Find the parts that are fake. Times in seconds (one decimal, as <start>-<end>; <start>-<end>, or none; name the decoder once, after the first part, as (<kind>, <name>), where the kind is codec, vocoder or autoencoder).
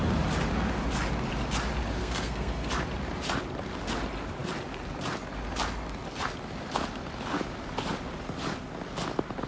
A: 2.0-2.7 (codec, SNAC)